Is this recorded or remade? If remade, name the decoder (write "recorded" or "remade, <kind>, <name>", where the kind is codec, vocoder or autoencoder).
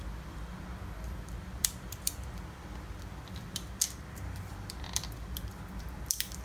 remade, vocoder, BigVGAN v2